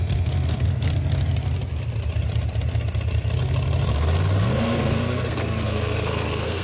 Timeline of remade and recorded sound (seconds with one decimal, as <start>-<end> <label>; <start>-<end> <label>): 0.0-0.9 remade; 0.9-4.4 recorded; 4.4-6.6 remade